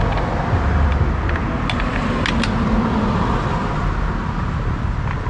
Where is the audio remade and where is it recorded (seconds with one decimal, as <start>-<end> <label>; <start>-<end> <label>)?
0.0-5.3 recorded